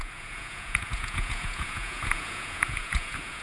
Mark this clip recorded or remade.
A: remade